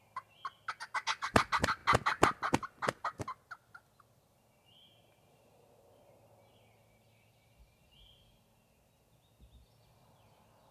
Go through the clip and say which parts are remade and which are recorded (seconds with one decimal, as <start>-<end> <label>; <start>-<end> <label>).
0.0-10.7 recorded